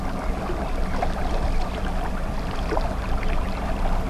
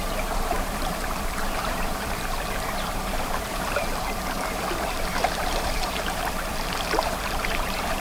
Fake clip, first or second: second